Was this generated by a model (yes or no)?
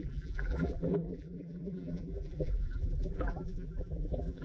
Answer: yes